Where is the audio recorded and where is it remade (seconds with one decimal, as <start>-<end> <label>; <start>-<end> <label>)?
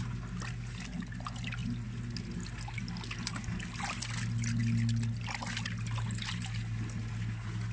0.0-7.7 recorded